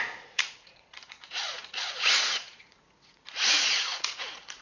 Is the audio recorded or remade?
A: remade